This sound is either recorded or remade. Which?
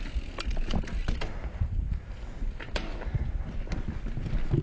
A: recorded